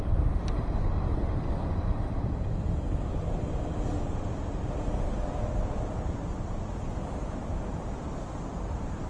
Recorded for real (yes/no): yes